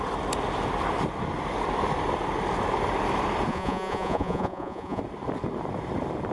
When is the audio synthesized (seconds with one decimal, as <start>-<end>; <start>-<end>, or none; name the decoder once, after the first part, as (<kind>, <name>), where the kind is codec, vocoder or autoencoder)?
3.5-5.0 (vocoder, Vocos)